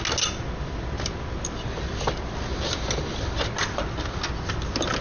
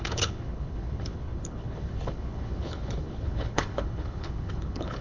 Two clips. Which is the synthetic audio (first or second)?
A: second